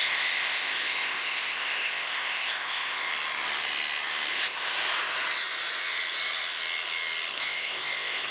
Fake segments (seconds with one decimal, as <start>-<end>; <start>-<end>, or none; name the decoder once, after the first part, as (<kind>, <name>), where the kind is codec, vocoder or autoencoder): 0.0-3.1 (codec, ZipCodec); 4.3-4.7; 7.4-8.3